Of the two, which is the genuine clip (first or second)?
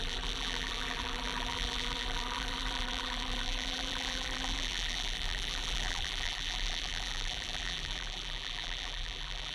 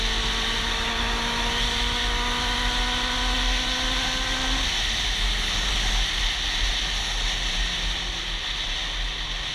second